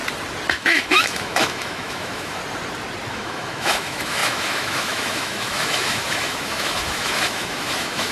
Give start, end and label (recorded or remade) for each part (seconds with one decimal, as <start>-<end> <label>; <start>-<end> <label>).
0.0-0.5 recorded; 0.5-2.4 remade; 2.4-3.1 recorded; 3.1-8.1 remade